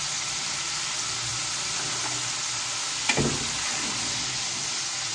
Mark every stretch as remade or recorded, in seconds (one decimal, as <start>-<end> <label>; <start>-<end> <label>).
0.0-5.1 recorded